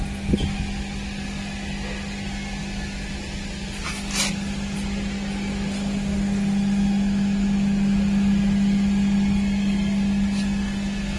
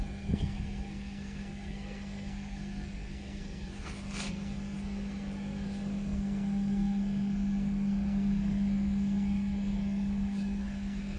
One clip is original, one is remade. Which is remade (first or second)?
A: second